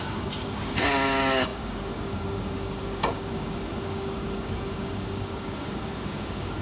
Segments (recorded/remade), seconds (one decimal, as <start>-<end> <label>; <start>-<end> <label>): 0.0-6.6 remade